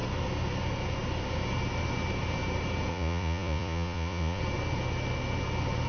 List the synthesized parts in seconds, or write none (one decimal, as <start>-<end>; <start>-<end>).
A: 2.9-4.4